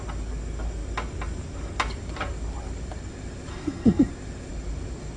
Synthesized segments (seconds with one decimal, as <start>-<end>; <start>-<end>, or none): 3.5-4.1